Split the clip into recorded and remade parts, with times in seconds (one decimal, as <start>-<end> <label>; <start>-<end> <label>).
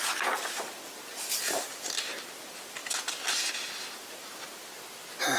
0.0-5.4 recorded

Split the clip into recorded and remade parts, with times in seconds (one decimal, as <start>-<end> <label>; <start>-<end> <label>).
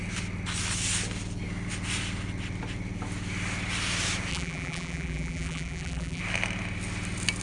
0.0-4.3 recorded; 4.3-6.2 remade; 6.2-7.4 recorded